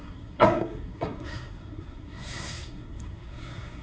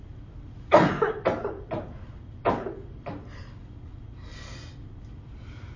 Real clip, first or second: second